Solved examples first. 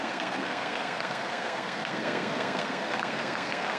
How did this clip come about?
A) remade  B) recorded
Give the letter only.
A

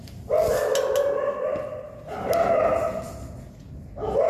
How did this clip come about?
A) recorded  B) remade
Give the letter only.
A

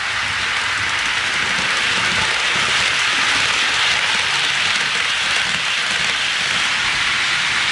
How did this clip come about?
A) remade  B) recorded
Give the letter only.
B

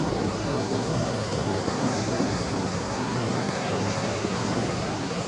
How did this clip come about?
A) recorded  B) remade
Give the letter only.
B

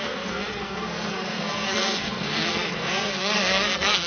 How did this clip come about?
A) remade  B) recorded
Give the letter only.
A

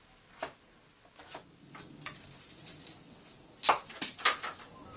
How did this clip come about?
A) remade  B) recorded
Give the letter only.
B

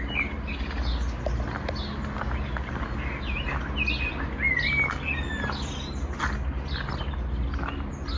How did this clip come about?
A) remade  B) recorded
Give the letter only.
B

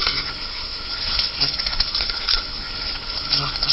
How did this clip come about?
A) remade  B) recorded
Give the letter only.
A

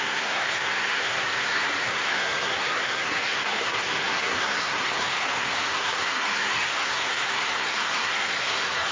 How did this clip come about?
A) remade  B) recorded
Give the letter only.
A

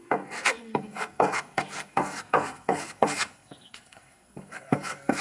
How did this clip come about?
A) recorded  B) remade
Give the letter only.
B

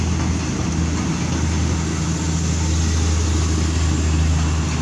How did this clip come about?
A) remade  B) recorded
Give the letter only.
B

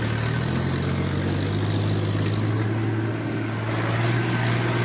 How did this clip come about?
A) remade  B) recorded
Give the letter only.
B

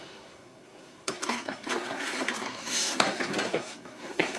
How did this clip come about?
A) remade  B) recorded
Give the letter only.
A